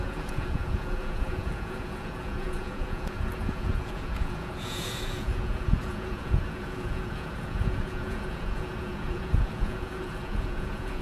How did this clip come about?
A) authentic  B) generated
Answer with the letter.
B